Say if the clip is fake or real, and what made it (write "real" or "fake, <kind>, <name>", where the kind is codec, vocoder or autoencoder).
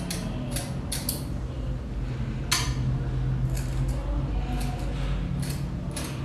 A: real